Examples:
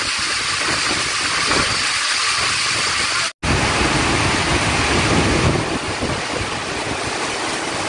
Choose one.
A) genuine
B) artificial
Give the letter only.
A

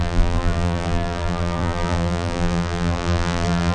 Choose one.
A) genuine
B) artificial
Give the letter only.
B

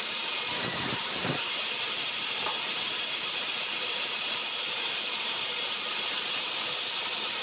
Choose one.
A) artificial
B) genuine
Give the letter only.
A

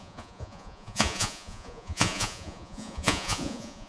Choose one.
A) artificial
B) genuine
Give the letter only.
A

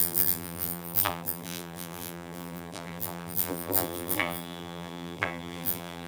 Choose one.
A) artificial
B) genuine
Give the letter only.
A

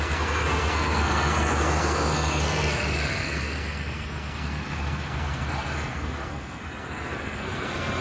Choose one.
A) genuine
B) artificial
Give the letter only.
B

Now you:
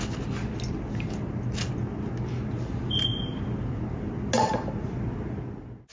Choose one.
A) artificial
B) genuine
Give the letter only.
B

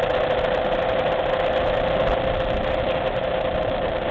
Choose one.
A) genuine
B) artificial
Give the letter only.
A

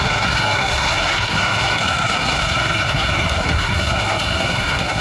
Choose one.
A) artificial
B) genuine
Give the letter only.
A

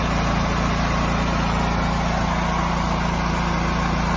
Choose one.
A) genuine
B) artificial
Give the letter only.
A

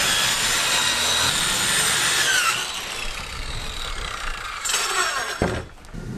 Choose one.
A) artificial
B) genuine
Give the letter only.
B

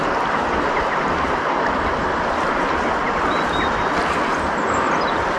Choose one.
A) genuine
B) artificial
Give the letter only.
A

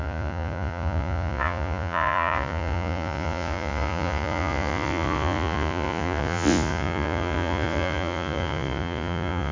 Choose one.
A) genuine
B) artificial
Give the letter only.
B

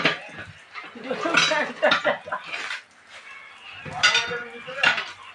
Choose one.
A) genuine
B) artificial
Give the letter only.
A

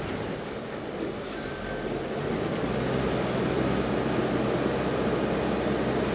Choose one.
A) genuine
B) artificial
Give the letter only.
A